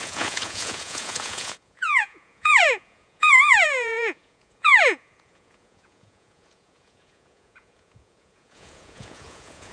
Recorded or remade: remade